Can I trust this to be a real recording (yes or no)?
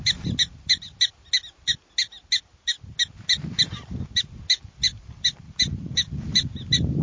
yes